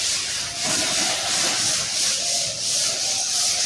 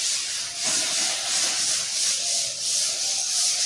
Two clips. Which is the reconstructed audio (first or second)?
first